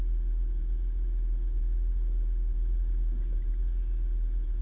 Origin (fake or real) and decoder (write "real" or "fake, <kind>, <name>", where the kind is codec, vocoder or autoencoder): real